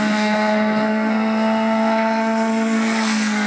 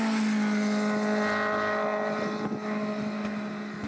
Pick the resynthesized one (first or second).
first